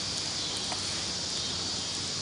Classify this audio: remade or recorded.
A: recorded